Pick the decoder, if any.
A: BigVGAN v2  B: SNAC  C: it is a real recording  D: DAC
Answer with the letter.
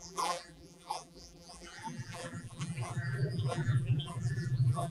A